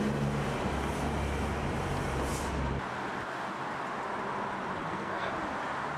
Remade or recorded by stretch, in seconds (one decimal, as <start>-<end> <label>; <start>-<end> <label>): 0.0-4.8 recorded; 4.8-5.3 remade; 5.3-6.0 recorded